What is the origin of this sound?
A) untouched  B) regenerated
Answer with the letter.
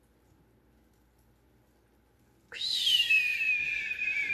A